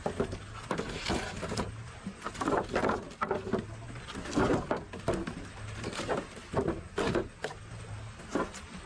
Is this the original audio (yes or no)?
yes